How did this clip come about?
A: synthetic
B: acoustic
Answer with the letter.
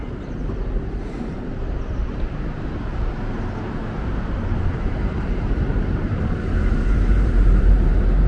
A